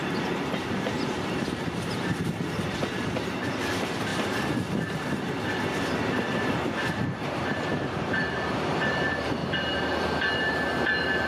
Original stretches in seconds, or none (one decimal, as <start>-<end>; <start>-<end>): 4.1-6.4; 9.4-10.3